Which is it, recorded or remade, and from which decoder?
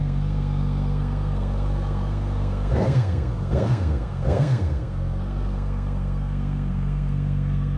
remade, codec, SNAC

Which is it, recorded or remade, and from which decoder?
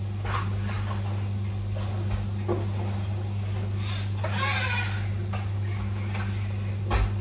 recorded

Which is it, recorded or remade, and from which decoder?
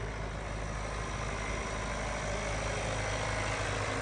recorded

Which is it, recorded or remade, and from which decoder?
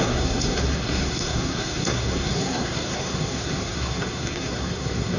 remade, codec, SNAC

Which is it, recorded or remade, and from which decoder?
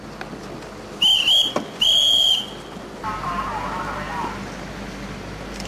recorded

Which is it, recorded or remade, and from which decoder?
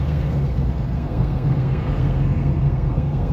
remade, codec, SNAC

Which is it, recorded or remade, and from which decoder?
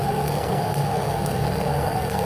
remade, codec, SNAC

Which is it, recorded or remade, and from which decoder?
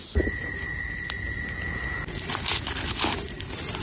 recorded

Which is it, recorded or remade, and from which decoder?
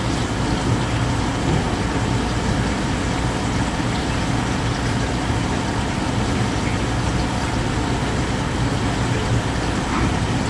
recorded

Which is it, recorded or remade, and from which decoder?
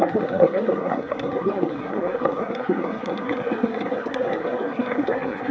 remade, codec, SNAC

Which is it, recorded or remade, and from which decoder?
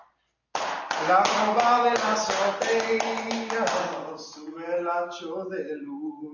recorded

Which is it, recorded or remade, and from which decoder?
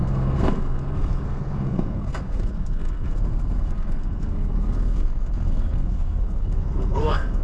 remade, codec, SNAC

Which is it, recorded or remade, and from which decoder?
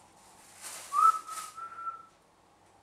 recorded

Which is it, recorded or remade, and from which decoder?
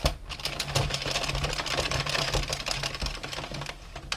recorded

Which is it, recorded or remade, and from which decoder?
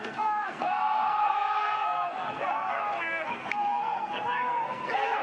remade, codec, SNAC